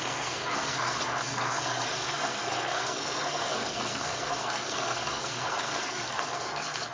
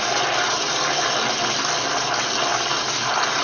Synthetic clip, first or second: first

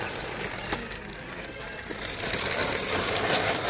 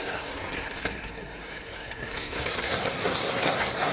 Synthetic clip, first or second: second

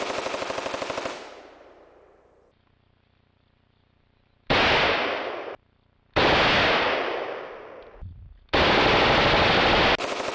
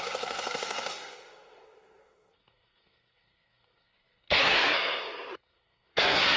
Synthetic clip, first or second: second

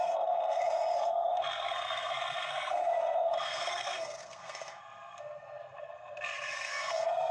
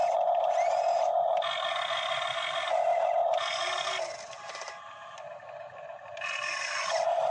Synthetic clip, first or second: first